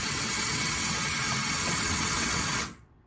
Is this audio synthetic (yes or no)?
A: yes